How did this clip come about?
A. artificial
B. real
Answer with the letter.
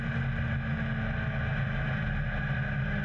B